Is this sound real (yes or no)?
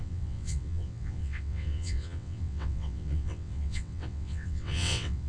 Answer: no